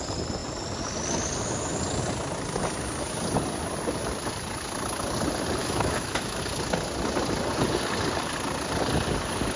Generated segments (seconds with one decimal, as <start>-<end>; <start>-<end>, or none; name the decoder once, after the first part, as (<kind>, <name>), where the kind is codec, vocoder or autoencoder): 5.6-6.4 (autoencoder, DAC-VAE)